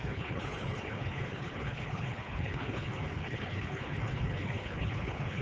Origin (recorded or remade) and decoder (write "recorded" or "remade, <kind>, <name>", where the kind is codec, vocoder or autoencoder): remade, codec, HILCodec